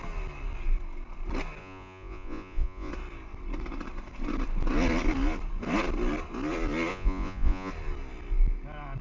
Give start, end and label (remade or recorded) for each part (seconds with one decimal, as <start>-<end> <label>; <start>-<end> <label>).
0.0-1.6 recorded; 1.6-2.9 remade; 2.9-6.9 recorded; 6.9-7.7 remade; 7.7-9.0 recorded